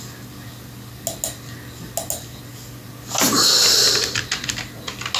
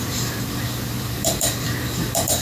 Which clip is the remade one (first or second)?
second